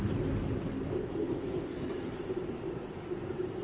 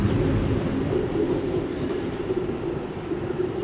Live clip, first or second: first